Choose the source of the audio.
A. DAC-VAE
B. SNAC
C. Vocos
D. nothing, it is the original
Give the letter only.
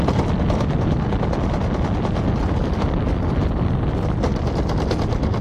D